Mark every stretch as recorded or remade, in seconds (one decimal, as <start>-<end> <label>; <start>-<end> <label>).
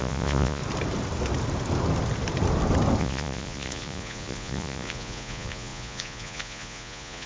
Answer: 0.0-0.6 remade; 0.6-3.0 recorded; 3.0-7.3 remade